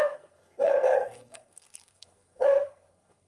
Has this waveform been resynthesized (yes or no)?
yes